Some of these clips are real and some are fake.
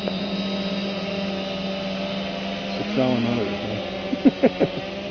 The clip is real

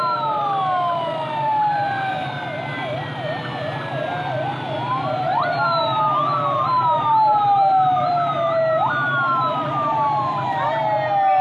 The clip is real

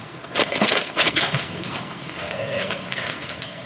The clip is fake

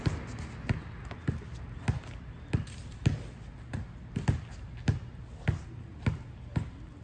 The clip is real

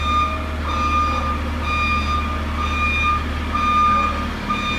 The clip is real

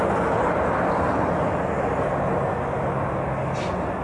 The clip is real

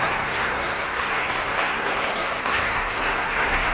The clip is fake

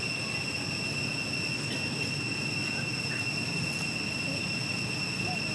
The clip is real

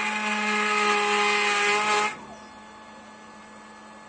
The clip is real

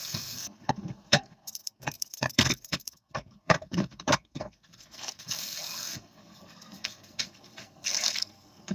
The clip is fake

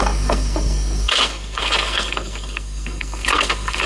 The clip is fake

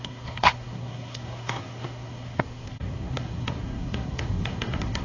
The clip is fake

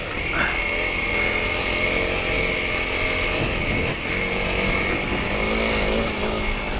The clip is real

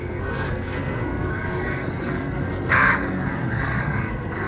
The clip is fake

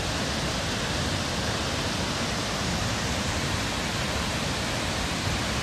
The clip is real